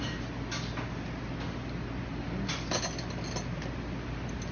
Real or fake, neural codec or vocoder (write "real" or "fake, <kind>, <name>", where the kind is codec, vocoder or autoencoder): real